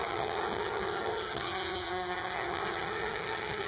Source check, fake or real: fake